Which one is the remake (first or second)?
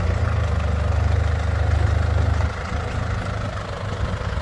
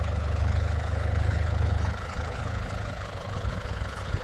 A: second